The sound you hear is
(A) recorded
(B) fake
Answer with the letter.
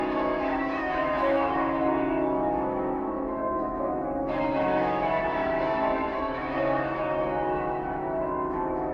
B